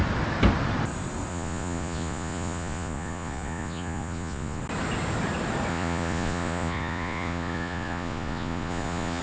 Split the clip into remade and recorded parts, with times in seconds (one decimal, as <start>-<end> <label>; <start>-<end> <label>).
0.0-1.3 recorded; 1.3-4.6 remade; 4.6-5.7 recorded; 5.7-9.2 remade